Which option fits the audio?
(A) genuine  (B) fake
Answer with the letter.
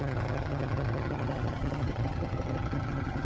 B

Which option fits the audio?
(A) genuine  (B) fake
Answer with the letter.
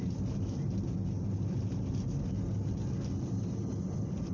A